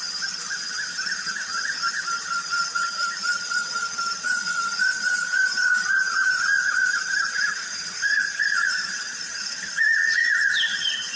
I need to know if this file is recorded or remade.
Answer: remade